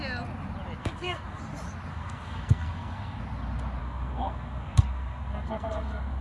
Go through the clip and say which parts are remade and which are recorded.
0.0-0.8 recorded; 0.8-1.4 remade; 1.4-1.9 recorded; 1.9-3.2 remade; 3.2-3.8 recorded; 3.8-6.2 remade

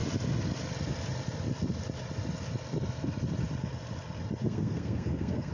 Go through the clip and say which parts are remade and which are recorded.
0.0-4.4 recorded; 4.4-5.5 remade

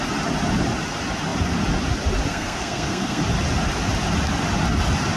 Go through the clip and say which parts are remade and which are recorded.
0.0-2.3 recorded; 2.3-3.2 remade; 3.2-5.2 recorded